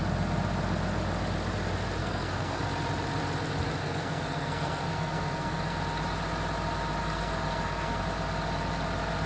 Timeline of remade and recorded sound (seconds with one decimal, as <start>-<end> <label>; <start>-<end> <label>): 0.0-2.0 recorded; 2.0-2.6 remade; 2.6-3.8 recorded; 3.8-5.8 remade; 5.8-7.0 recorded; 7.0-8.0 remade; 8.0-9.3 recorded